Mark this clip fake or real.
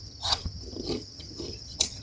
fake